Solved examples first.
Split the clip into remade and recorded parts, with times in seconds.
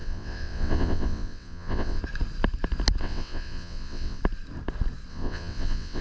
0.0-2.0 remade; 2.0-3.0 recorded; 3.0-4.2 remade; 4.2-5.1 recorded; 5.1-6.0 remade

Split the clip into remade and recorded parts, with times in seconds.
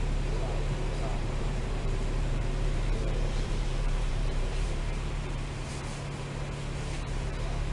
0.0-1.1 recorded; 1.1-5.7 remade; 5.7-7.7 recorded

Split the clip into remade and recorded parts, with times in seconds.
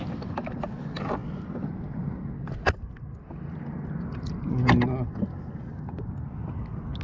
0.0-7.0 recorded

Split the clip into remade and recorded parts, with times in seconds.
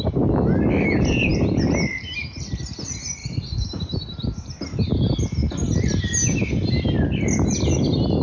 0.0-3.2 recorded; 3.2-4.9 remade; 4.9-8.2 recorded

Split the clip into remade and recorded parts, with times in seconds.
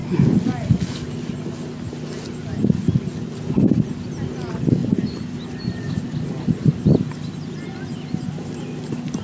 0.0-9.2 recorded